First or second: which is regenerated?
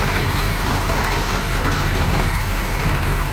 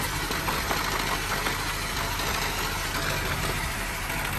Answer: first